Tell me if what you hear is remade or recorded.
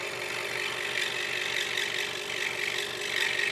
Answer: recorded